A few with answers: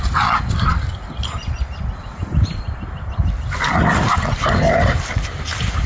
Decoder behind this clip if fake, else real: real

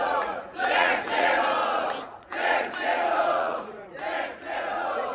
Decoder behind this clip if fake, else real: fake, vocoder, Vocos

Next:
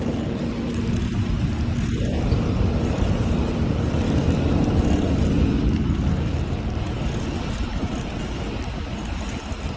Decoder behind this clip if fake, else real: real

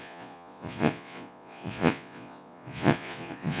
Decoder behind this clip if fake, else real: fake, vocoder, Vocos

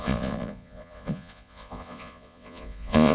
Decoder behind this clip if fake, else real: fake, vocoder, Vocos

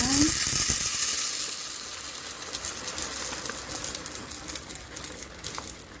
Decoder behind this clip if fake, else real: real